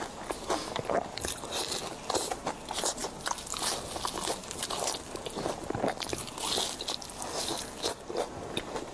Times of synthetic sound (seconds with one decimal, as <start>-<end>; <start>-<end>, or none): 3.0-3.7; 4.4-5.6